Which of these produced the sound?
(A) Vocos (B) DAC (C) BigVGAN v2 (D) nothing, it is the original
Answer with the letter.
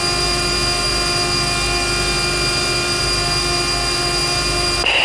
C